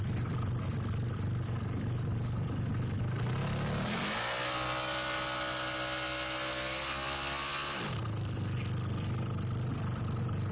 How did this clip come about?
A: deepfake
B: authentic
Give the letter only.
B